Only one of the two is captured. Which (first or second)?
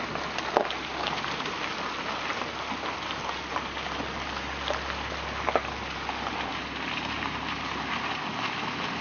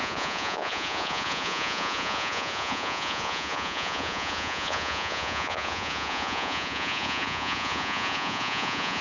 first